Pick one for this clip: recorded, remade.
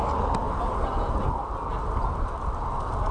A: recorded